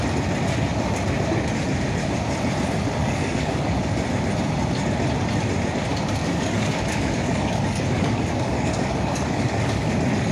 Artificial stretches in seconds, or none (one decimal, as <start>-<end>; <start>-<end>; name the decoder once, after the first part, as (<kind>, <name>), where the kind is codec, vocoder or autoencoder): 3.0-3.7 (codec, DAC); 6.2-9.9